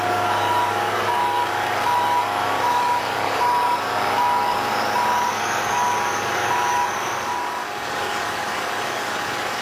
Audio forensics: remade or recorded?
remade